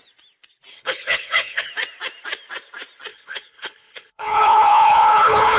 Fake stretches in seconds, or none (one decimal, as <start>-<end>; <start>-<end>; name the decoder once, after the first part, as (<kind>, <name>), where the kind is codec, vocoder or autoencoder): 0.7-1.7 (codec, HILCodec); 3.1-5.6